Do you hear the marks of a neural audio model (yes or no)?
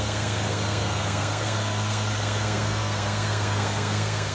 yes